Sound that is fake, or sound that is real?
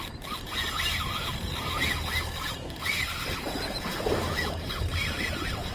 fake